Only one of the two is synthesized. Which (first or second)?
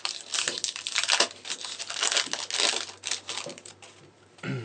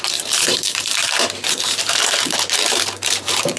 second